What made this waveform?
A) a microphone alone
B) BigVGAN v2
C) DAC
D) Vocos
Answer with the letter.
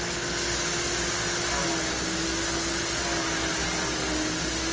A